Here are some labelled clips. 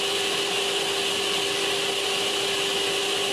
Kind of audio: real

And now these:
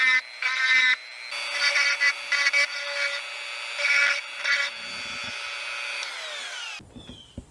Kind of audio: real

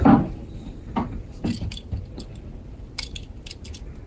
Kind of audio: real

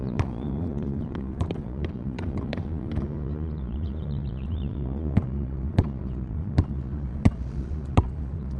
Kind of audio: fake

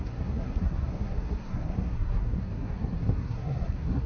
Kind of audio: fake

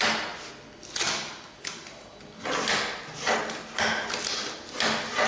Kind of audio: real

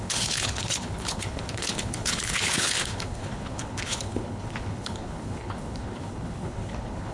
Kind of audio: fake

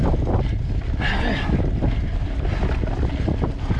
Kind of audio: real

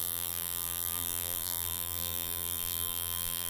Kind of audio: fake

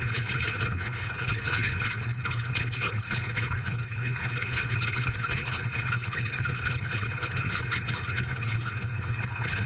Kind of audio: fake